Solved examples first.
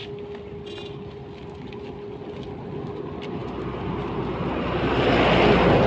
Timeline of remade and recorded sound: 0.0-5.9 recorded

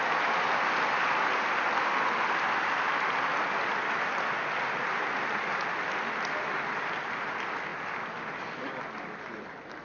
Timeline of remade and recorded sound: 0.0-9.8 recorded

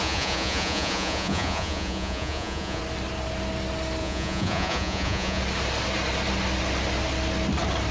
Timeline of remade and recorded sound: 0.0-2.8 remade; 2.8-4.0 recorded; 4.0-5.4 remade; 5.4-7.9 recorded

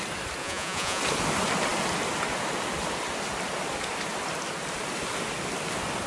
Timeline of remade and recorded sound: 0.0-0.4 recorded; 0.4-1.0 remade; 1.0-6.1 recorded

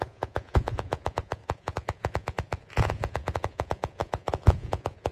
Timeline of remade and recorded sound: 0.0-5.1 remade

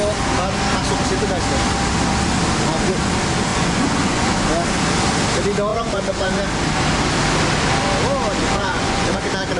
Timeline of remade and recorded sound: 0.0-3.5 recorded; 3.5-4.3 remade; 4.3-5.7 recorded; 5.7-6.4 remade; 6.4-8.4 recorded; 8.4-9.2 remade; 9.2-9.6 recorded